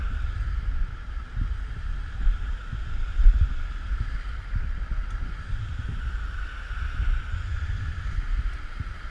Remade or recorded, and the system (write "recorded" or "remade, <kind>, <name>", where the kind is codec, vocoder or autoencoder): recorded